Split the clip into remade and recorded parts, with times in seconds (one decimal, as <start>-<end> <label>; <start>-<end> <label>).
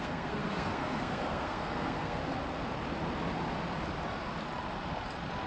0.0-2.2 remade; 2.2-5.5 recorded